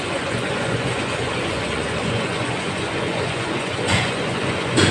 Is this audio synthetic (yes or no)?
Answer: yes